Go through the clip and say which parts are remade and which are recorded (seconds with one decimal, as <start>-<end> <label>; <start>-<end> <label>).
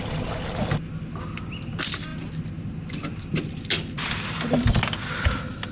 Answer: 0.0-5.7 recorded